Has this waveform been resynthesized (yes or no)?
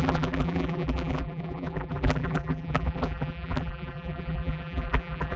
yes